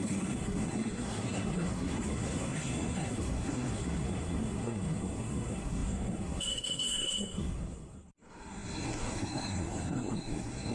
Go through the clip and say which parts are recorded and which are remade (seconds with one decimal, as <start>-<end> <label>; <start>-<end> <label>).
0.0-10.7 remade